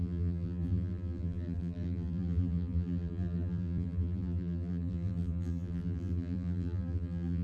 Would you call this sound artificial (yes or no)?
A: yes